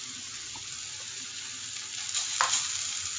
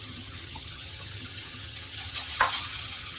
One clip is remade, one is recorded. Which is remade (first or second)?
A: second